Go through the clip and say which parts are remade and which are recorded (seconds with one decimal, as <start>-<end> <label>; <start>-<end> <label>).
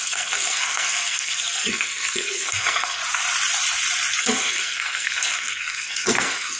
0.0-3.0 remade; 3.0-4.2 recorded; 4.2-6.6 remade